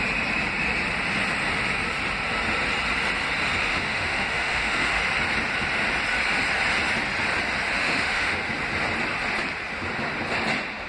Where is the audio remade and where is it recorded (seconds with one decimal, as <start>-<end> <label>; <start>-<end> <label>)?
0.0-3.7 recorded; 3.7-5.0 remade; 5.0-7.8 recorded; 7.8-8.4 remade; 8.4-10.9 recorded